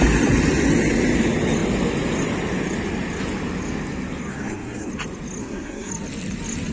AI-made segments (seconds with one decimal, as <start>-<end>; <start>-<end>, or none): 4.3-4.9; 5.4-5.9